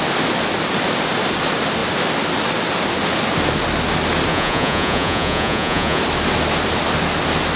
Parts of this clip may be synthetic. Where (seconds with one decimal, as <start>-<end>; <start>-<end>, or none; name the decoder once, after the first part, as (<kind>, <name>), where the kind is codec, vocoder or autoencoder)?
4.3-6.0 (vocoder, Vocos)